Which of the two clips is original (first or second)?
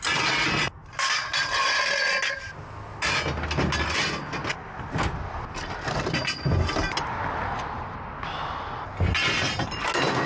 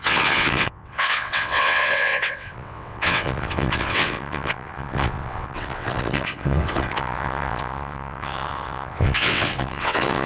first